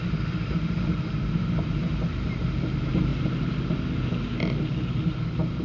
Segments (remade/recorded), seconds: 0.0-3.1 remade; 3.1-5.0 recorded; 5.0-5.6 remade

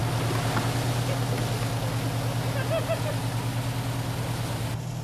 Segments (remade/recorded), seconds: 0.0-5.0 recorded

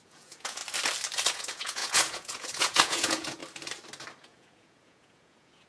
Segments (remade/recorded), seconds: 0.0-0.6 remade; 0.6-1.3 recorded; 1.3-3.4 remade; 3.4-4.2 recorded; 4.2-5.7 remade